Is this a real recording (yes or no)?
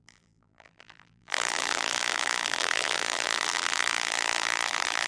no